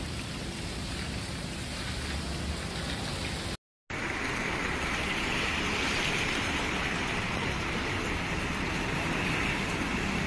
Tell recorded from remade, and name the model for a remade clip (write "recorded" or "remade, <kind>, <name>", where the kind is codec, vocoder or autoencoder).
recorded